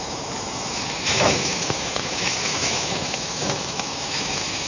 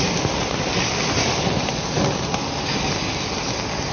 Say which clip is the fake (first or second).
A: first